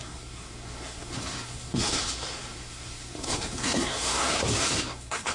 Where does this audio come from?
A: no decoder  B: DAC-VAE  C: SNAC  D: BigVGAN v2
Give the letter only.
C